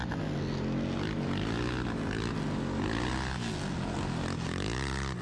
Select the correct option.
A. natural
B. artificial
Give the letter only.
A